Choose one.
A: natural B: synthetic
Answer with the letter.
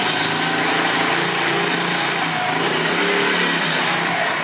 A